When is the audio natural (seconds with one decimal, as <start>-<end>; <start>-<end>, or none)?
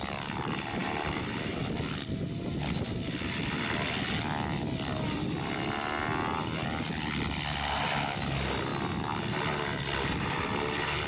0.0-0.8; 1.6-11.1